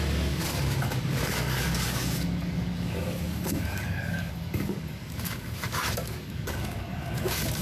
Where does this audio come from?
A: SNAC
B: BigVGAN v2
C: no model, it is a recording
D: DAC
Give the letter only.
D